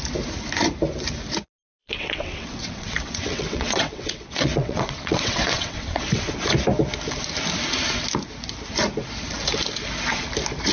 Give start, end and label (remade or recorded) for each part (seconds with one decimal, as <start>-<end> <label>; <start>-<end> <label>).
0.0-1.8 recorded; 1.8-6.3 remade; 6.3-10.7 recorded